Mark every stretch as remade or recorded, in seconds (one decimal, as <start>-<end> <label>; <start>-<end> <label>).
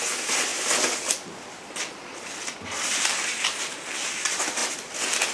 0.0-5.3 recorded